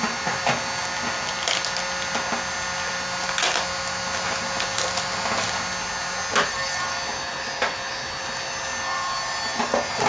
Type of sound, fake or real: real